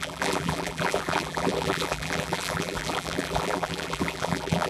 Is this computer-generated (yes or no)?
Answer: yes